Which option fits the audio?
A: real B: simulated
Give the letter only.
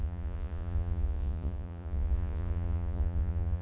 B